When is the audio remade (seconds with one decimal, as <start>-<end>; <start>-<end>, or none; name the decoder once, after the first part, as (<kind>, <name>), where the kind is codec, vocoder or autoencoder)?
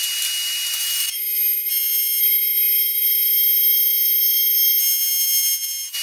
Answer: 0.8-1.7 (autoencoder, DAC-VAE); 2.2-4.8